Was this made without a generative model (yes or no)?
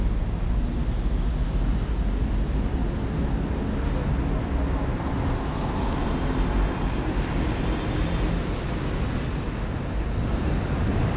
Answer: yes